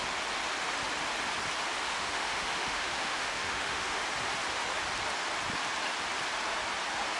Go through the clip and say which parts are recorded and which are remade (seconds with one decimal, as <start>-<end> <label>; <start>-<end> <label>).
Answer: 0.0-1.9 recorded; 1.9-4.0 remade; 4.0-7.2 recorded